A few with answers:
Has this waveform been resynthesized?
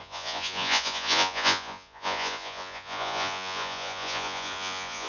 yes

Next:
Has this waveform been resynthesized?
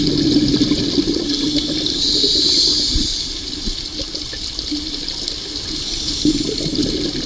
no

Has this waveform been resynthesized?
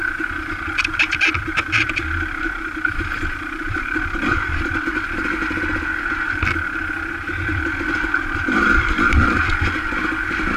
yes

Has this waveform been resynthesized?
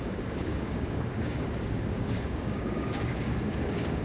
yes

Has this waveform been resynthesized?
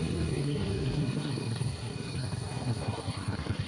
yes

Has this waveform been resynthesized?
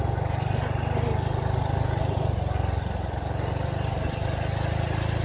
no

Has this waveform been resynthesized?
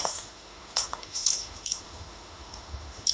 yes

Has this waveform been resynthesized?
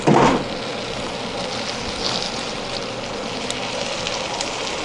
no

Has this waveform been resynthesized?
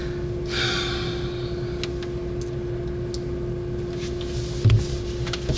no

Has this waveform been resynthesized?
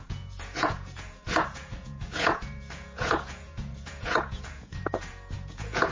yes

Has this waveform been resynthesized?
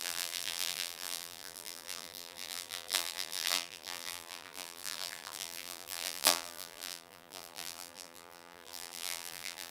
yes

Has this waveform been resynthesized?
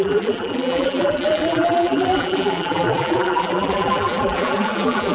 yes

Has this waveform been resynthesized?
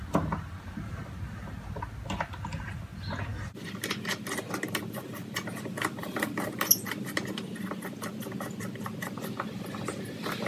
no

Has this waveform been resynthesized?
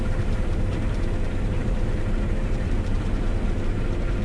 yes